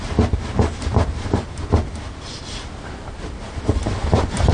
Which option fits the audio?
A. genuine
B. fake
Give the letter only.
A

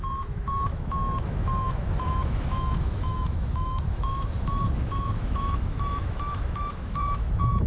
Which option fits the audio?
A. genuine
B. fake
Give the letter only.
B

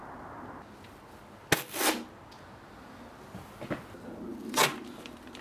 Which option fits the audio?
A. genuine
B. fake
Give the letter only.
A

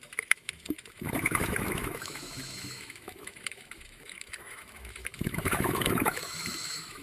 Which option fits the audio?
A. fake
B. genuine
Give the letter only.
A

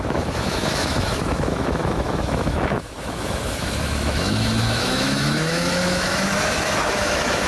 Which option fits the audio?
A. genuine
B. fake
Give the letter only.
B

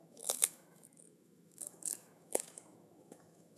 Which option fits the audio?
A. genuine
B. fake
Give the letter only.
B